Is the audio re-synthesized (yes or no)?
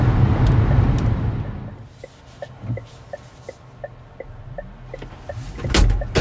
no